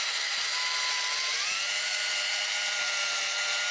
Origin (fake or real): real